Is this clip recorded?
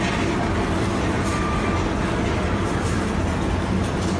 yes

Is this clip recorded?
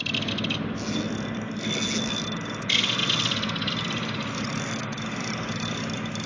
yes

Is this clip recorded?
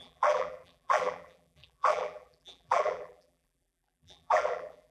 no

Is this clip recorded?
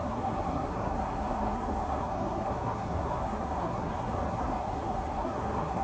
no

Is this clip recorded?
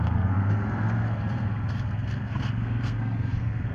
no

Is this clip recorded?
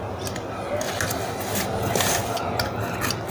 yes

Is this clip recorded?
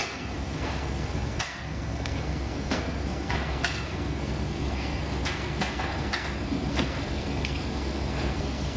no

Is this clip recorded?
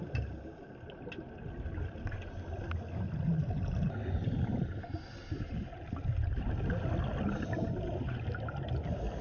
yes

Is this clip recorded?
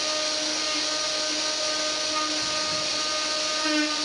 yes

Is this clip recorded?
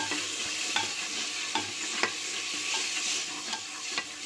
yes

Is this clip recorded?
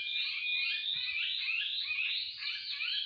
yes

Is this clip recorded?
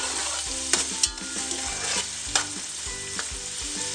yes